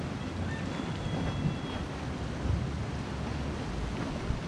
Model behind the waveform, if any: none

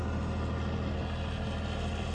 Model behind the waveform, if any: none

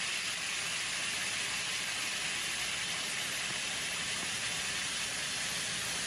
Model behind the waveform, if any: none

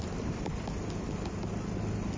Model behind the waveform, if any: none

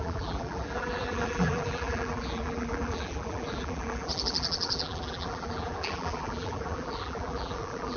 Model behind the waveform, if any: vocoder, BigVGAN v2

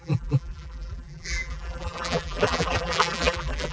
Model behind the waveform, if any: vocoder, BigVGAN v2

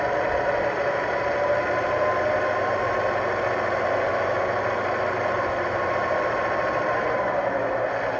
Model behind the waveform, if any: none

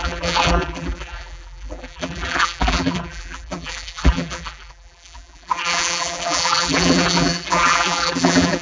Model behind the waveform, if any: vocoder, BigVGAN v2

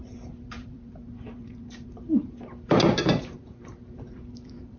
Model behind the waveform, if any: vocoder, BigVGAN v2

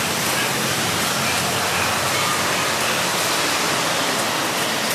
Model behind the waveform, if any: none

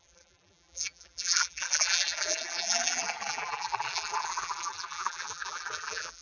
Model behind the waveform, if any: vocoder, BigVGAN v2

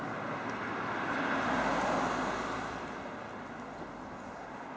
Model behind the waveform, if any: none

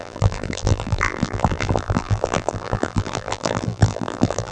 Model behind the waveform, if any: vocoder, BigVGAN v2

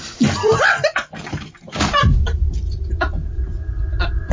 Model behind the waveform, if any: vocoder, BigVGAN v2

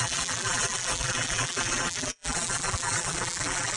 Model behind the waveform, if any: vocoder, BigVGAN v2